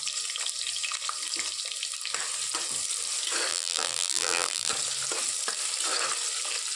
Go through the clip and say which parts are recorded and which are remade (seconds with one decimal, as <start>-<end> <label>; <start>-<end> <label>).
0.0-3.5 recorded; 3.5-4.7 remade; 4.7-6.8 recorded

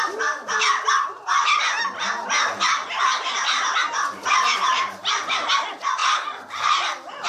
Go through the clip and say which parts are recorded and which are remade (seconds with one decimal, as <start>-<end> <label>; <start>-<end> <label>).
0.0-7.3 recorded

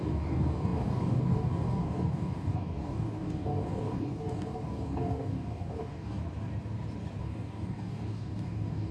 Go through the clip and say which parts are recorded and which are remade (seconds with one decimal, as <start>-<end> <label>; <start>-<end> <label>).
0.0-6.2 remade; 6.2-7.2 recorded; 7.2-8.9 remade

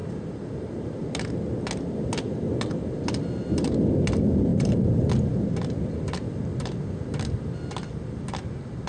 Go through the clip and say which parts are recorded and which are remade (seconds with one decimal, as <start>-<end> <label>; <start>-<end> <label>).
0.0-1.0 remade; 1.0-4.5 recorded; 4.5-5.1 remade; 5.1-8.9 recorded